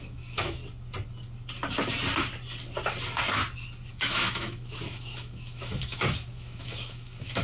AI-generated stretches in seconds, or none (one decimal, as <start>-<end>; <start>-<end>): 0.0-0.6; 3.9-7.4